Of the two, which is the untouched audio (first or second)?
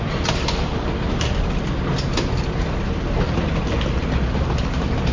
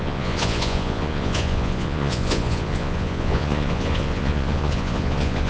first